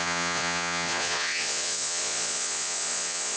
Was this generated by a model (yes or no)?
yes